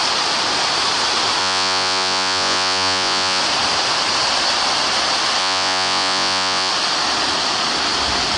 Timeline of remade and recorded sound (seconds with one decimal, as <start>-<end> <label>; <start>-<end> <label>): 0.0-1.4 recorded; 1.4-3.4 remade; 3.4-5.4 recorded; 5.4-6.7 remade; 6.7-8.4 recorded